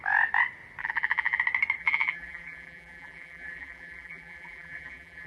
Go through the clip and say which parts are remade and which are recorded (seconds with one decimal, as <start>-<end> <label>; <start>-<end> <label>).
0.0-0.8 recorded; 0.8-1.4 remade; 1.4-1.8 recorded; 1.8-5.3 remade